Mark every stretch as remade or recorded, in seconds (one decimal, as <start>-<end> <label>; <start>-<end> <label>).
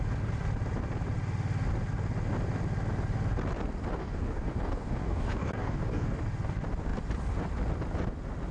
0.0-4.0 recorded; 4.0-6.2 remade; 6.2-8.5 recorded